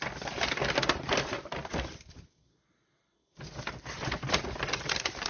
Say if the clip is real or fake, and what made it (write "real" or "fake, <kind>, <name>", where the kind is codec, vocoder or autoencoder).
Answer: real